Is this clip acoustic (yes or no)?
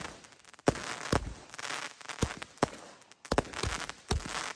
yes